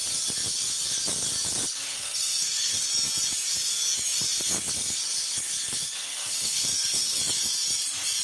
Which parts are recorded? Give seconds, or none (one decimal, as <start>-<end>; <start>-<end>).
0.0-1.9; 2.8-6.0; 7.2-8.2